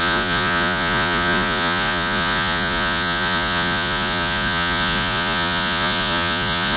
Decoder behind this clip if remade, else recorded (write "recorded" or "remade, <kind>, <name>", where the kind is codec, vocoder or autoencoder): remade, vocoder, Vocos